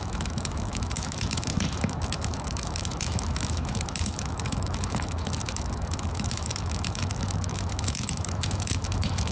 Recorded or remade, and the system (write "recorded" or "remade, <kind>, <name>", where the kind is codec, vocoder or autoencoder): remade, autoencoder, DAC-VAE